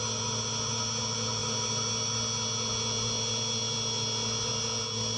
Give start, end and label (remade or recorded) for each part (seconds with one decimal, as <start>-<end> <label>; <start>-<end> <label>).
0.0-5.2 recorded